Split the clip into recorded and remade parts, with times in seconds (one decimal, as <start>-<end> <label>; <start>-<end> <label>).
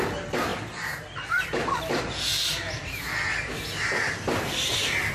0.0-5.1 recorded